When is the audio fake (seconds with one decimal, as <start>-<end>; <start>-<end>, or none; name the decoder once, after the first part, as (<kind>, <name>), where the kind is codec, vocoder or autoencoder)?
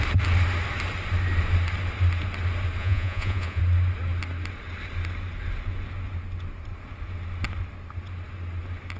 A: 2.8-3.6 (vocoder, Vocos)